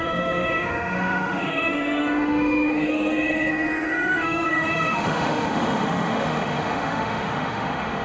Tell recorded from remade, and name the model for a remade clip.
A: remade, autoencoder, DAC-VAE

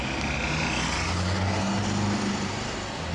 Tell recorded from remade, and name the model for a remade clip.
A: recorded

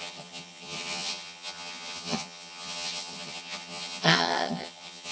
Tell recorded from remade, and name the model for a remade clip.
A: remade, vocoder, HiFi-GAN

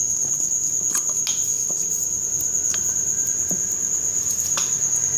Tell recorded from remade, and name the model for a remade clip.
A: recorded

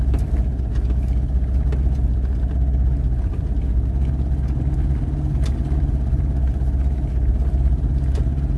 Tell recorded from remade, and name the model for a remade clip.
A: recorded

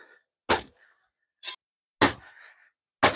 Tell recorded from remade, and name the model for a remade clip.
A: recorded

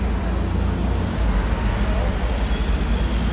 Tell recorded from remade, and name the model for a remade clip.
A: recorded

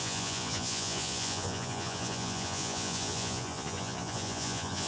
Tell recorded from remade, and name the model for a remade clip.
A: remade, vocoder, Vocos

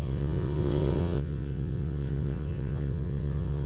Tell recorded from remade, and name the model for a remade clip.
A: remade, vocoder, WaveNeXt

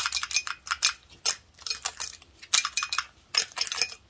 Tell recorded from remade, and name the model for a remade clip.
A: recorded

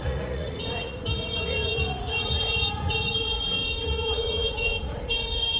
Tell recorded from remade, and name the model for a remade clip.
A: remade, vocoder, Vocos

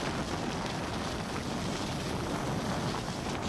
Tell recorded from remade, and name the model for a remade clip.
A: recorded